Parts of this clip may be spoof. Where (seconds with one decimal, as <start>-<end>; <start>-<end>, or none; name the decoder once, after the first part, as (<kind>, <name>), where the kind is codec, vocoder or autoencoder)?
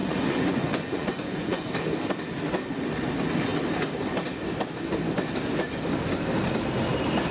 0.0-1.6 (vocoder, Vocos)